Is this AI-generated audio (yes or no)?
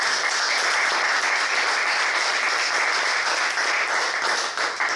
no